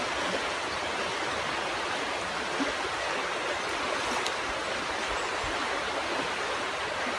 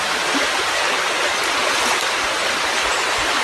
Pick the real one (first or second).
first